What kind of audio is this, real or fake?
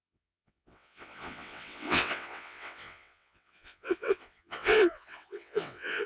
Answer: fake